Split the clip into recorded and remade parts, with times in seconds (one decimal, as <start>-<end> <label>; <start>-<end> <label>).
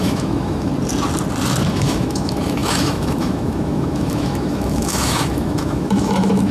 0.0-0.7 remade; 0.7-1.7 recorded; 1.7-6.5 remade